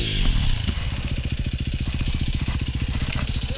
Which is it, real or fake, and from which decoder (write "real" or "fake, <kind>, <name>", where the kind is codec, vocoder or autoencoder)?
real